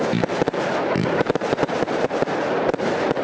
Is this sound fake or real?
fake